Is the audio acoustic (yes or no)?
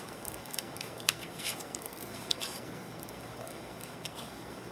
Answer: no